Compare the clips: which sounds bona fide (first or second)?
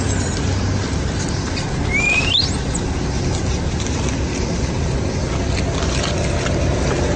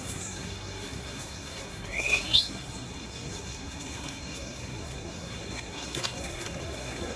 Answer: first